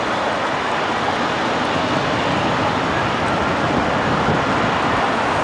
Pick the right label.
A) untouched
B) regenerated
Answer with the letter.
A